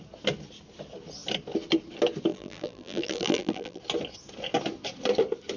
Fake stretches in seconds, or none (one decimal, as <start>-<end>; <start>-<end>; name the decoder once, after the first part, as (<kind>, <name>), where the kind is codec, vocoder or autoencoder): 2.3-3.8 (vocoder, BigVGAN v2)